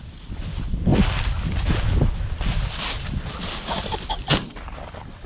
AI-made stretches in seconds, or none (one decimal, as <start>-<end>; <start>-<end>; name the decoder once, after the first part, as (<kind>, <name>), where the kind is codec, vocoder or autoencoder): 0.0-0.9 (vocoder, BigVGAN v2); 3.2-4.4